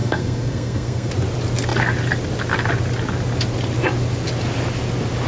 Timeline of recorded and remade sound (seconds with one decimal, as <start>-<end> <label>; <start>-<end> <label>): 0.0-1.1 remade; 1.1-5.3 recorded